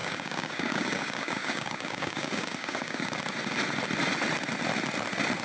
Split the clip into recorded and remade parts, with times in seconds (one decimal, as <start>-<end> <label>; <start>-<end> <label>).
0.0-3.2 remade; 3.2-5.4 recorded